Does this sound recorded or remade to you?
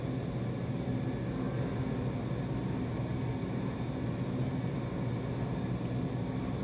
recorded